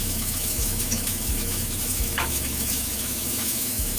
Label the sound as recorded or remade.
remade